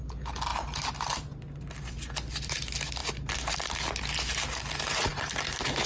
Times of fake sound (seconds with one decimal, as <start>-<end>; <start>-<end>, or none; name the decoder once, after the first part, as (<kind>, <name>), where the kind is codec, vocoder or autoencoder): none